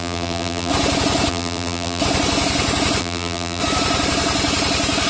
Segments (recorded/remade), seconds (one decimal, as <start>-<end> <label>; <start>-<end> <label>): 0.0-0.7 remade; 0.7-1.3 recorded; 1.3-2.0 remade; 2.0-3.0 recorded; 3.0-3.6 remade; 3.6-5.1 recorded